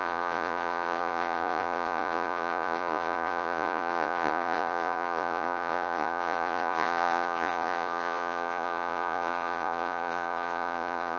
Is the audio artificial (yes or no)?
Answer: yes